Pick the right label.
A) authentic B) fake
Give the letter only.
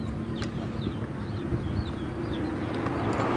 A